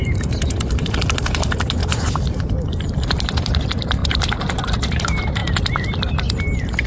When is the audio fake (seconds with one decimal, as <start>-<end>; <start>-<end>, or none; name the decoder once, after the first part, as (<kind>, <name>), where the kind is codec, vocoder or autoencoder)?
0.5-1.8 (vocoder, BigVGAN v2); 2.9-5.4; 6.1-6.9